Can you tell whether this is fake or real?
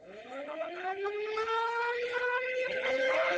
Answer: fake